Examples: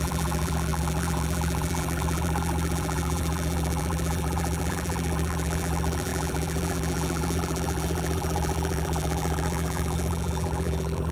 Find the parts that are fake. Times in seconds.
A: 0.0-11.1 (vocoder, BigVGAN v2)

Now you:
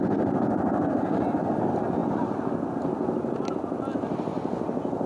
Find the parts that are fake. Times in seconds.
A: none

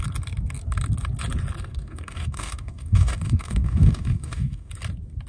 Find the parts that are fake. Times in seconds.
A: 1.7-4.7 (codec, DAC)

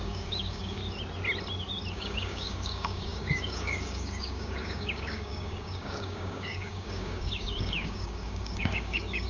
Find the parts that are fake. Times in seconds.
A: 0.0-0.8 (codec, DAC); 1.9-9.3

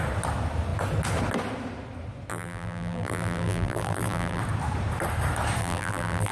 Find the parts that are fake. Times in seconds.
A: 2.3-4.4 (vocoder, BigVGAN v2); 5.6-6.3